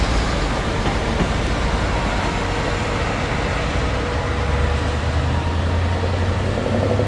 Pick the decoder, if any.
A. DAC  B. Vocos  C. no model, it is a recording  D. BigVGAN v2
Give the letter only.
C